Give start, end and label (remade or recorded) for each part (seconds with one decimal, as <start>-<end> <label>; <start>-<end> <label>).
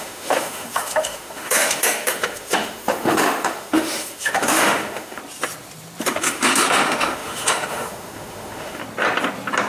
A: 0.0-5.2 remade; 5.2-6.1 recorded; 6.1-8.8 remade; 8.8-9.7 recorded